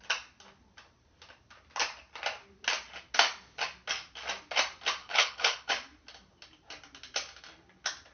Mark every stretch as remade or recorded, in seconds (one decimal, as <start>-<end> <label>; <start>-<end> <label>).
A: 0.0-5.0 recorded; 5.0-5.7 remade; 5.7-8.1 recorded